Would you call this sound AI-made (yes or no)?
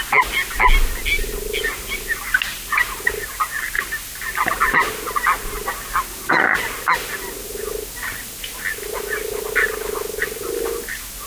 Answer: no